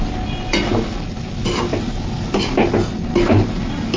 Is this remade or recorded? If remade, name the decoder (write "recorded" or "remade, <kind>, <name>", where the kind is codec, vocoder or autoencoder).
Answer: recorded